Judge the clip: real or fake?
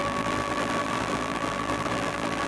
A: fake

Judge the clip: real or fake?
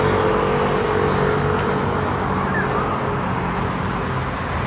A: real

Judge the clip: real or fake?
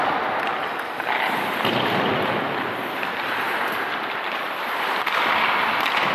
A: real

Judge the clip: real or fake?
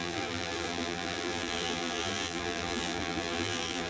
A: fake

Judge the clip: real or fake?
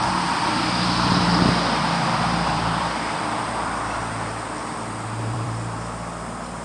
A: fake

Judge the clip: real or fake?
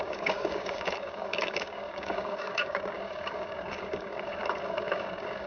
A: fake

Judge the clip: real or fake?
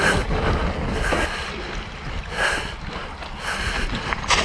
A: real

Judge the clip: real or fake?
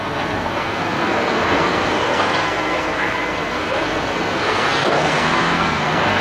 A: fake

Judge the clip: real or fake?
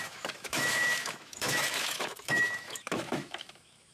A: fake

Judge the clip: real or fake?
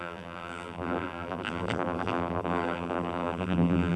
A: fake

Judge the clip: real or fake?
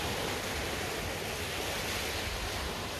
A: real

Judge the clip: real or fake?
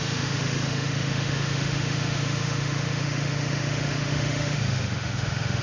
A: fake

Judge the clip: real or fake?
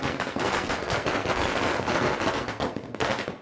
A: fake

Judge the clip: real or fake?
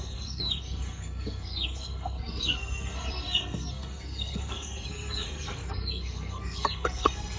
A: fake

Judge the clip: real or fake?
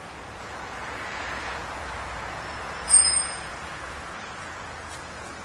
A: fake